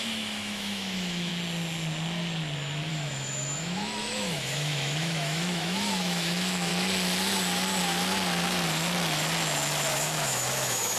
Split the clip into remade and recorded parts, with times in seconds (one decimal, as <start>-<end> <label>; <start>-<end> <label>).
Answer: 0.0-1.3 remade; 1.3-2.9 recorded; 2.9-6.7 remade; 6.7-9.9 recorded; 9.9-11.0 remade